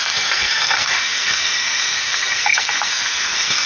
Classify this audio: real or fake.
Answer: fake